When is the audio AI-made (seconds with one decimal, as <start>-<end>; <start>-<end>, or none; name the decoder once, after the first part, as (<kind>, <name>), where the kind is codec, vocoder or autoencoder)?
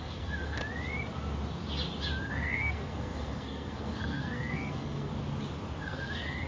0.0-0.6 (codec, SNAC); 2.2-5.1; 5.8-6.5